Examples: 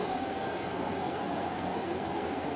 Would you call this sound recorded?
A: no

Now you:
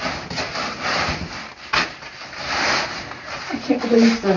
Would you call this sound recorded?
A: yes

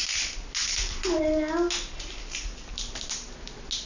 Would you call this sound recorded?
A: yes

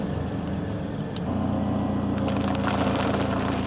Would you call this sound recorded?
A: yes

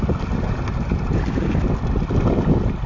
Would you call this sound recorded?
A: yes